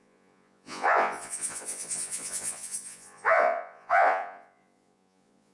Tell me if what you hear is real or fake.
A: fake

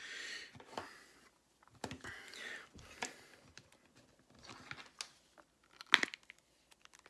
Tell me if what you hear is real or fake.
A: real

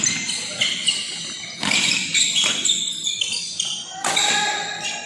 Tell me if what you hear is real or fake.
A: real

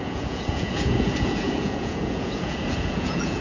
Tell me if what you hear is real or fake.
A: fake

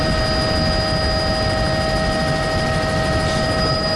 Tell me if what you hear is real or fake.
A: real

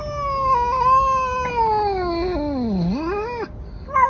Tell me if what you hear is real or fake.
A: real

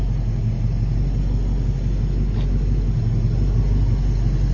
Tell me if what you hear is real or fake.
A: real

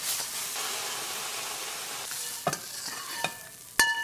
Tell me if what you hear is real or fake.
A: real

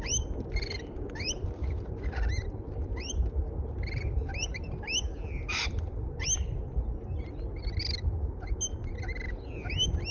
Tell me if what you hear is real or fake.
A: real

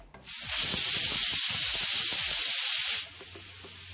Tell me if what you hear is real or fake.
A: real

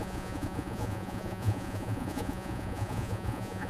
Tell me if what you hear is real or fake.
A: fake